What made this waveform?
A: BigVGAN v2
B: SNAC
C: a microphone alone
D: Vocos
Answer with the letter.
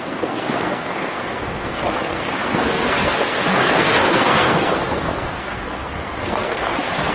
B